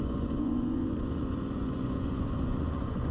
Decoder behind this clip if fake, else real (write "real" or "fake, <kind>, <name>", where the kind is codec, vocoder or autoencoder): fake, vocoder, Vocos